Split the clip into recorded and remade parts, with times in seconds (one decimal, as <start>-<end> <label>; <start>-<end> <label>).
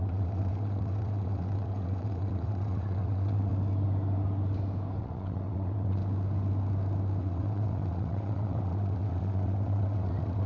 0.0-3.5 remade; 3.5-5.0 recorded; 5.0-6.0 remade; 6.0-7.2 recorded; 7.2-10.5 remade